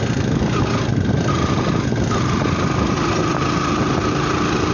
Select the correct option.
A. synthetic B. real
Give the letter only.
B